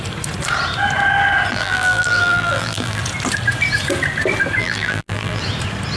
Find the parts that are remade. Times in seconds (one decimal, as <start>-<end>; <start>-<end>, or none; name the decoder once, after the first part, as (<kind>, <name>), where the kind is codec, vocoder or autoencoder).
1.5-3.0 (vocoder, BigVGAN v2); 4.6-5.4